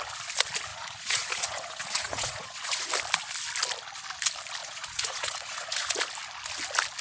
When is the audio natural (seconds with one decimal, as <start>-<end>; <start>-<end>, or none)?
0.0-0.7; 2.9-4.6; 5.9-7.0